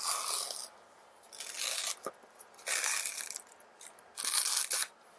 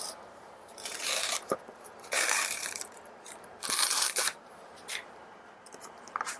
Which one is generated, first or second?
second